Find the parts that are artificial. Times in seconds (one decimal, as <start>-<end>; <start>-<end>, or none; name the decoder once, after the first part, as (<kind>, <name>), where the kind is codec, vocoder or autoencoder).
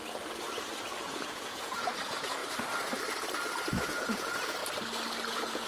1.0-2.4 (vocoder, Vocos); 3.7-4.6; 5.3-5.7